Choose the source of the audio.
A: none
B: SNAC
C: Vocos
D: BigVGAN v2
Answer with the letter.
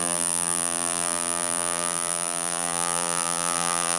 D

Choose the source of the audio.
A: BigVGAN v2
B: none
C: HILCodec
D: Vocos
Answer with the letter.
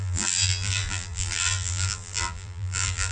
A